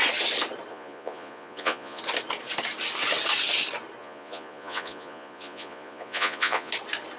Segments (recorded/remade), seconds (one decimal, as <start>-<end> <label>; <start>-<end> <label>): 0.0-0.7 recorded; 0.7-2.0 remade; 2.0-4.0 recorded; 4.0-6.7 remade; 6.7-7.2 recorded